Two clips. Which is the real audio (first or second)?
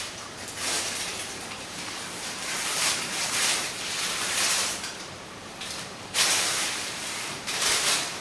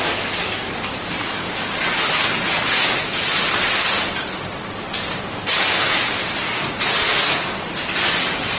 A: second